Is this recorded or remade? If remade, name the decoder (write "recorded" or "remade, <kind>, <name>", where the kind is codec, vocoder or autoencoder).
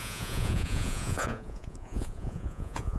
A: remade, vocoder, Vocos